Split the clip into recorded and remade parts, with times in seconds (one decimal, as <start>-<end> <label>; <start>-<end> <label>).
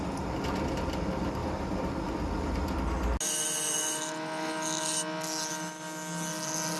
0.0-6.8 recorded